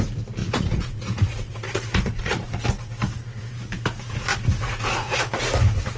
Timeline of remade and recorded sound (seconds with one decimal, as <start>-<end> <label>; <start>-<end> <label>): 0.0-0.4 recorded; 0.4-2.6 remade; 2.6-4.3 recorded; 4.3-5.3 remade; 5.3-6.0 recorded